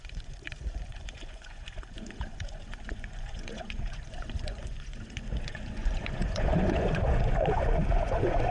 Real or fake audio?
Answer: fake